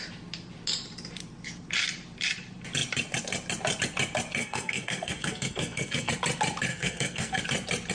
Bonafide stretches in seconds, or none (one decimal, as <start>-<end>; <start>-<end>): 0.0-4.4; 6.1-6.7; 7.4-7.9